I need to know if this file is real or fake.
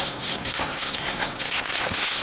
fake